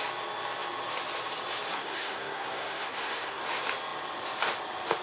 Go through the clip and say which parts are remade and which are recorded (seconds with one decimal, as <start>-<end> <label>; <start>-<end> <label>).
0.0-1.7 recorded; 1.7-3.4 remade; 3.4-5.0 recorded